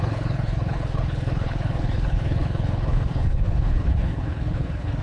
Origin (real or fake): fake